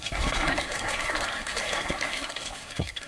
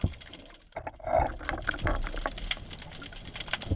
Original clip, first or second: second